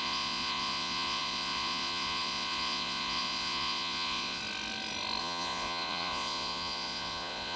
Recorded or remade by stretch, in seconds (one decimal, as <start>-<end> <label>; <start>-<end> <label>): 0.0-4.4 remade; 4.4-5.2 recorded; 5.2-7.6 remade